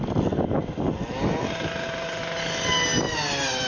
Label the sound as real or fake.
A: real